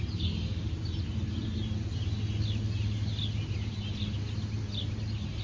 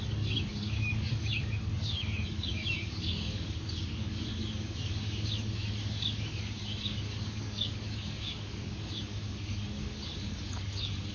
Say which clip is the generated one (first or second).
second